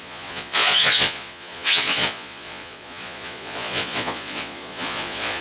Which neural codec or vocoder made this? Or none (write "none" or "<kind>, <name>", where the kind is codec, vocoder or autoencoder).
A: vocoder, Vocos